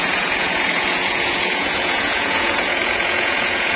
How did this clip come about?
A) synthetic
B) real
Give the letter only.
A